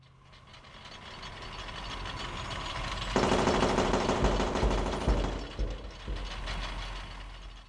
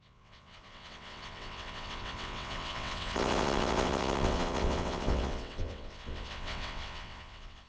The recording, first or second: first